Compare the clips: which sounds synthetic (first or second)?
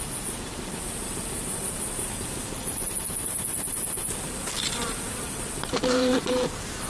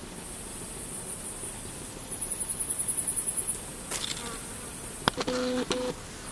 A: first